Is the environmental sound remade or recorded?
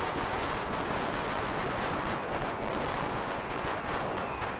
remade